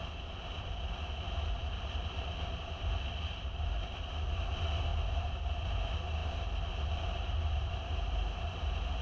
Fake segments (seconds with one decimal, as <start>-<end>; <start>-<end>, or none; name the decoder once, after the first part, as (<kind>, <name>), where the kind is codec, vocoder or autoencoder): none